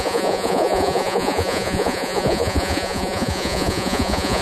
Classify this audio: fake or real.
fake